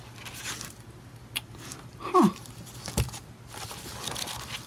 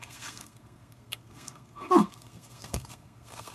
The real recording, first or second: first